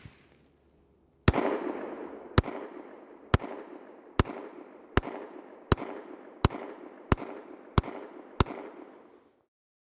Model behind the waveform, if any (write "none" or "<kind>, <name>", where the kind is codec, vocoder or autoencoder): none